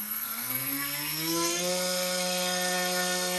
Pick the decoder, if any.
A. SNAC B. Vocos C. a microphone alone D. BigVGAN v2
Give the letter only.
A